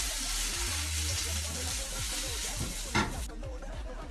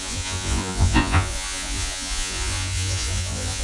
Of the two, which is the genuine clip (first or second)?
first